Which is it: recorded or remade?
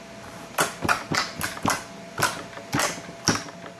recorded